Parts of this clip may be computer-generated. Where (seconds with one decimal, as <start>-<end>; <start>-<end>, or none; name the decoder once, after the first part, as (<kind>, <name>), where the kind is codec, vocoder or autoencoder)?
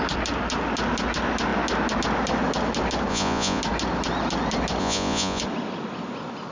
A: 3.1-3.6 (vocoder, Vocos); 4.8-5.4